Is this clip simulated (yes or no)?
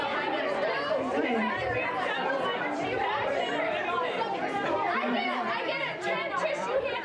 yes